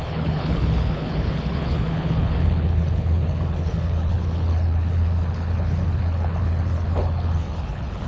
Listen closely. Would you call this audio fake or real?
fake